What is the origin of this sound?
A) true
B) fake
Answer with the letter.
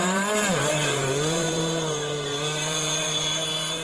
B